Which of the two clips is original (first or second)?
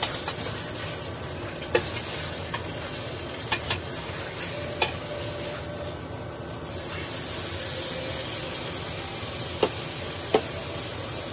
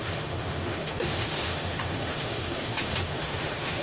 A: first